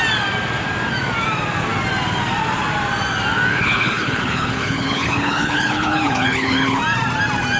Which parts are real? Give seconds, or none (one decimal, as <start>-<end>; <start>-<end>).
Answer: 0.0-3.5; 6.8-7.6